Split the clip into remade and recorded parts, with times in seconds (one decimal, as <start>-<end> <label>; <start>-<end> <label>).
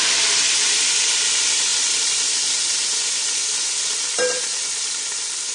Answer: 0.0-5.5 recorded